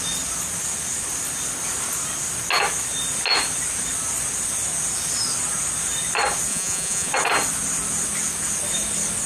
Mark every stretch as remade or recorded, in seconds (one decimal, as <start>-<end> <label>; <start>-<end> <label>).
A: 0.0-6.5 recorded; 6.5-7.1 remade; 7.1-9.3 recorded